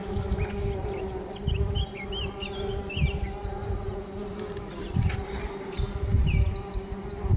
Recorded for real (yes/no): yes